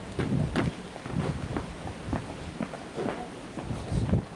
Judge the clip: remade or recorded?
recorded